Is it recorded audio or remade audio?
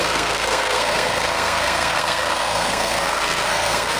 remade